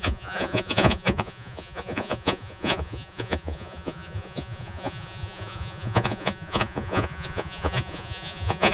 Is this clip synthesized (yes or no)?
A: yes